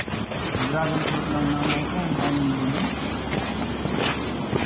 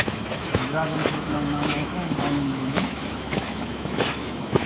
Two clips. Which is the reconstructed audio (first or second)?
second